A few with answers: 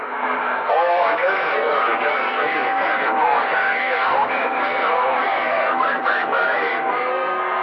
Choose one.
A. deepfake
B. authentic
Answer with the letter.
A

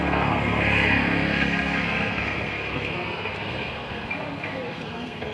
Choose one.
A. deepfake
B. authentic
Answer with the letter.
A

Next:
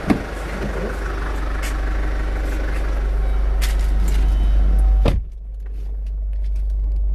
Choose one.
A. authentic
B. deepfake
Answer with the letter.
A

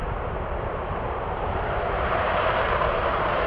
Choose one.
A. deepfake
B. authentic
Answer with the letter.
A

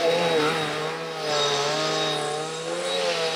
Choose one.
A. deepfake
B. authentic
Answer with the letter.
B